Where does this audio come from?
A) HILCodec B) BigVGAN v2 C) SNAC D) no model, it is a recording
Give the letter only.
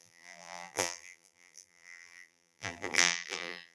B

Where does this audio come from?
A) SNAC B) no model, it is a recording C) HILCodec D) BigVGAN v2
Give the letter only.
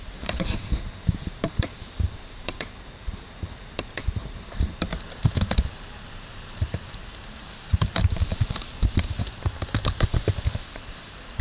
D